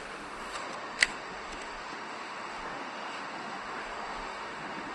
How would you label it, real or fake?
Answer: fake